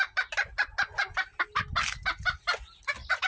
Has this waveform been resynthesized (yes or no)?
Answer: no